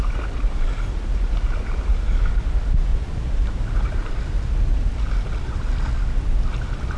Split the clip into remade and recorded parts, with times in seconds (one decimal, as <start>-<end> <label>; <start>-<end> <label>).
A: 0.0-2.9 recorded; 2.9-4.1 remade; 4.1-7.0 recorded

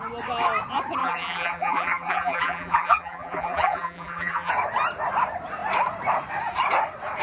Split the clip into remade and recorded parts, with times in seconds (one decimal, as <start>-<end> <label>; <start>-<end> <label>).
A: 0.0-1.0 recorded; 1.0-4.5 remade; 4.5-7.2 recorded

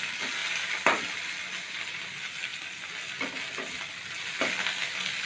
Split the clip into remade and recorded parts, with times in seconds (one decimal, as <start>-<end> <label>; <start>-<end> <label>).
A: 0.0-0.4 recorded; 0.4-1.4 remade; 1.4-5.3 recorded

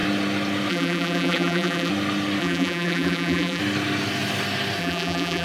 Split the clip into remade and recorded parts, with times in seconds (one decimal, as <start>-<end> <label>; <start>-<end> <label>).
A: 0.0-0.7 recorded; 0.7-1.9 remade; 1.9-2.4 recorded; 2.4-3.6 remade; 3.6-4.8 recorded; 4.8-5.4 remade

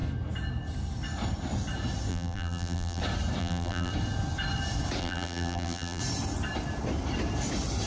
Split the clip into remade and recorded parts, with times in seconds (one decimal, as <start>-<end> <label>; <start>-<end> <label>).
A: 0.0-2.1 recorded; 2.1-3.0 remade; 3.0-3.4 recorded; 3.4-3.9 remade; 3.9-5.0 recorded; 5.0-6.0 remade; 6.0-7.9 recorded

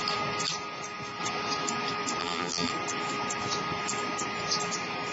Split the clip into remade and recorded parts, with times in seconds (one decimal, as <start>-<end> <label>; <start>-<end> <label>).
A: 0.0-2.2 recorded; 2.2-2.7 remade; 2.7-5.1 recorded

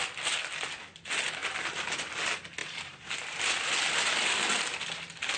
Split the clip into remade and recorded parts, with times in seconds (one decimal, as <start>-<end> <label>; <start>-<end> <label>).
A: 0.0-1.4 recorded; 1.4-2.1 remade; 2.1-2.6 recorded; 2.6-3.7 remade; 3.7-5.4 recorded

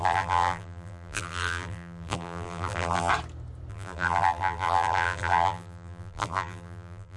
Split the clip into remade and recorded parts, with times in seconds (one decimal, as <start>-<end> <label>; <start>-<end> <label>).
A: 0.0-3.1 remade; 3.1-3.7 recorded; 3.7-7.2 remade